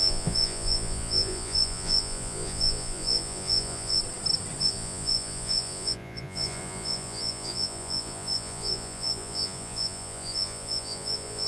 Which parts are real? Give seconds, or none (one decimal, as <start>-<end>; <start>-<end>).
4.0-4.6